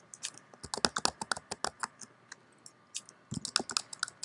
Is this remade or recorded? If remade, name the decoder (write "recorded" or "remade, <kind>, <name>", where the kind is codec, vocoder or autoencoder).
recorded